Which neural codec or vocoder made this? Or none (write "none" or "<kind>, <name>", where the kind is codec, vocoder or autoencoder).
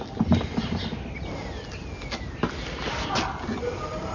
none